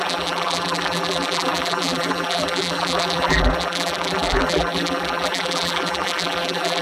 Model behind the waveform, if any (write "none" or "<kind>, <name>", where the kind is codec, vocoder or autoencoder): vocoder, BigVGAN v2